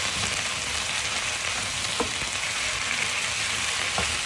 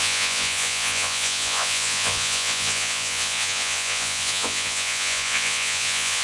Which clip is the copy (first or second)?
second